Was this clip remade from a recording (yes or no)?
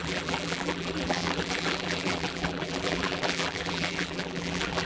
yes